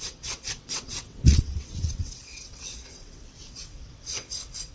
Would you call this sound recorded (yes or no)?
no